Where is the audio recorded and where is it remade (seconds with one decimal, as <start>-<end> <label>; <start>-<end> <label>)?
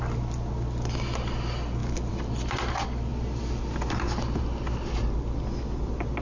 0.0-1.8 recorded; 1.8-2.7 remade; 2.7-6.2 recorded